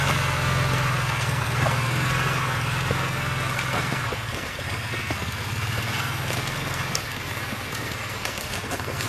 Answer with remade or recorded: remade